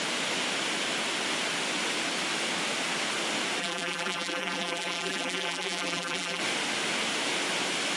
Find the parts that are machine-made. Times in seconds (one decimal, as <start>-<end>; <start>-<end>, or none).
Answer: 3.6-6.4